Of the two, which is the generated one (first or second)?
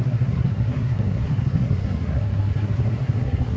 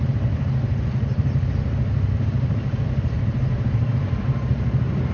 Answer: first